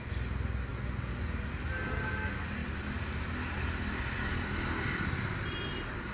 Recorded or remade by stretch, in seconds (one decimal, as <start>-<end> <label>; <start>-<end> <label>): 0.0-6.1 recorded